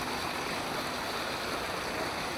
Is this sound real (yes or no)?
yes